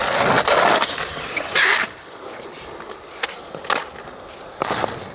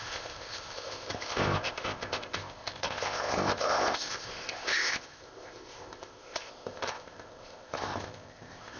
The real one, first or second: first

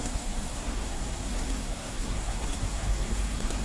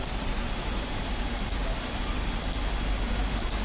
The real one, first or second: second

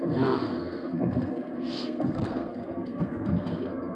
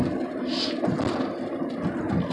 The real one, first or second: second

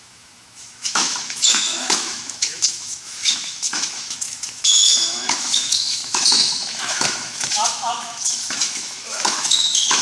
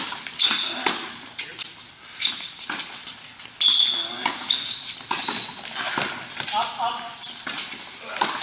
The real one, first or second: second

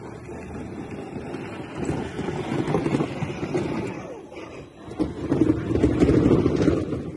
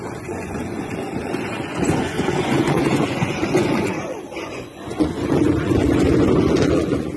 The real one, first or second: first